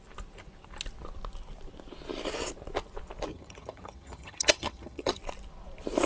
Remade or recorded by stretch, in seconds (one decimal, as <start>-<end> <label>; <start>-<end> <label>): 0.0-3.3 recorded; 3.3-5.2 remade; 5.2-6.1 recorded